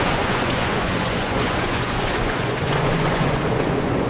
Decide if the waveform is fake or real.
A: fake